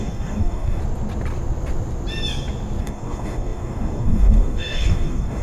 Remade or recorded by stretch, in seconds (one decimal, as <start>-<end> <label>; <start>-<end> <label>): 0.0-0.8 remade; 0.8-2.8 recorded; 2.8-5.4 remade